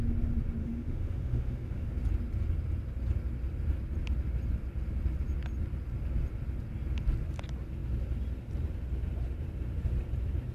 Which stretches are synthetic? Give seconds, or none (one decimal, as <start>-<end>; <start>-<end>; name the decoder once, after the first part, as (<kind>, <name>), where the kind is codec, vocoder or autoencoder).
0.6-1.9 (autoencoder, DAC-VAE)